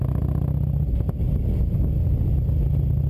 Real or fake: real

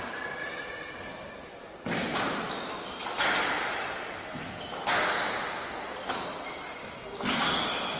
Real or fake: real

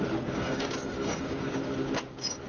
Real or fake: fake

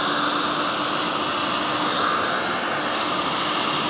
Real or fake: real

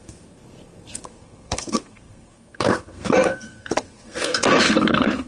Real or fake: fake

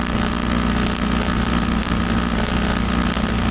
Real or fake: real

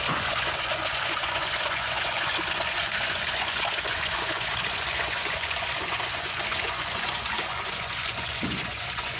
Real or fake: fake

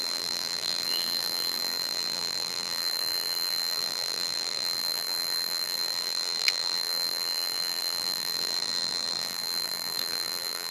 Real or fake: fake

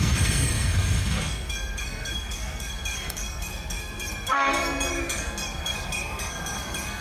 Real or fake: fake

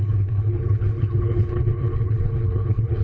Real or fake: fake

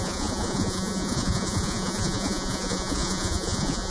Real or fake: fake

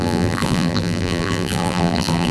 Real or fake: fake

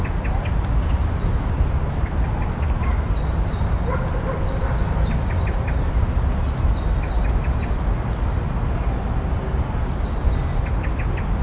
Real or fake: real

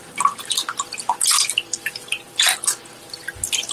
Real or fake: real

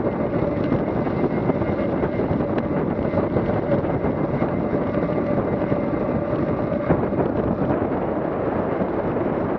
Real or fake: real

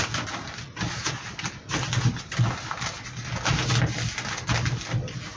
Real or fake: real